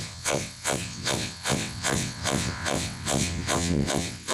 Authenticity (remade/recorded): remade